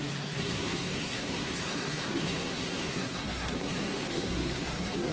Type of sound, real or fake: fake